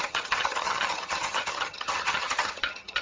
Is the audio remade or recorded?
remade